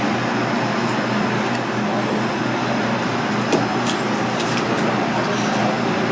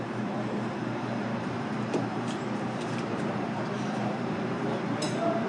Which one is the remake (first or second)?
second